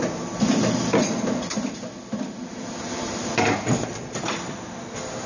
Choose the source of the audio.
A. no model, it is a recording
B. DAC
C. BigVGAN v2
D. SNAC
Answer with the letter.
A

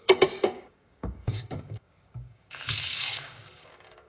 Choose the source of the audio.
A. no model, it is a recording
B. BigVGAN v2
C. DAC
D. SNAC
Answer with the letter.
C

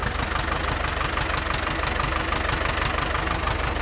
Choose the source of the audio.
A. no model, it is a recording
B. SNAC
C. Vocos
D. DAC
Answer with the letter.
A